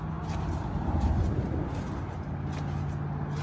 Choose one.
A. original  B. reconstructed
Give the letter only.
A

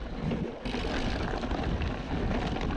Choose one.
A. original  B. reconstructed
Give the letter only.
A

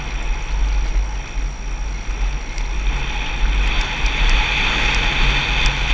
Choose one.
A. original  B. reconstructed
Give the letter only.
A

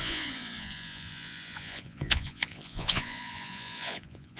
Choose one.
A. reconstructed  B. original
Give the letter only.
A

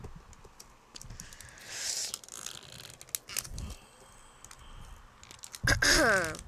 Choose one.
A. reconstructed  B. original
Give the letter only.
B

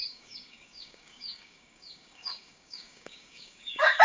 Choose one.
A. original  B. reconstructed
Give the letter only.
B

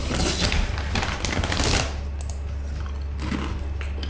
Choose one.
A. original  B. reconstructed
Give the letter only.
A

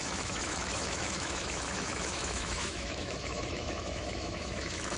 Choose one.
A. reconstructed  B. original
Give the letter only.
A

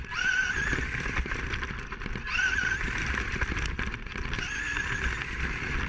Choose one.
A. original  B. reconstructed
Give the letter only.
A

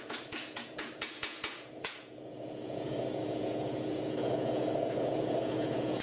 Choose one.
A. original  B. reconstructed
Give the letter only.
B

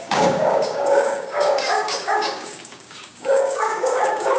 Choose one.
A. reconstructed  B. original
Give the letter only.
A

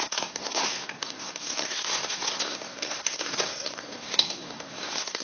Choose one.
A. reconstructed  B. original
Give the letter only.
A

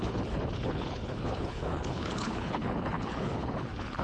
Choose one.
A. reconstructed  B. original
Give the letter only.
A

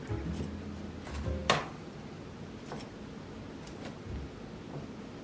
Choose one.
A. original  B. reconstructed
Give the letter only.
A